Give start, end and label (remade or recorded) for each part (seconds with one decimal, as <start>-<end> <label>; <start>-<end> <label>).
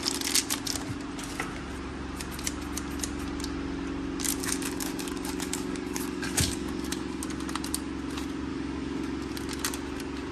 0.0-4.4 recorded; 4.4-7.2 remade; 7.2-8.5 recorded; 8.5-9.3 remade; 9.3-10.3 recorded